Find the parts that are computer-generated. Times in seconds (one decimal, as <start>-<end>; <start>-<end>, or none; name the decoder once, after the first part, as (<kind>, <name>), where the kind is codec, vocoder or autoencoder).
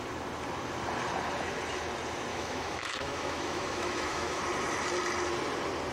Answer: 2.3-4.4 (autoencoder, DAC-VAE)